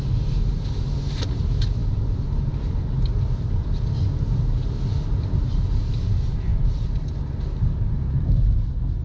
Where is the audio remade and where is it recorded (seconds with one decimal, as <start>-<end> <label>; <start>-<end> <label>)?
0.0-9.0 recorded